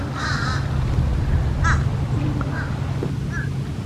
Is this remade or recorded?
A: recorded